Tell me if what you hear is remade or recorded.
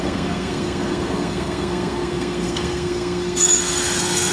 remade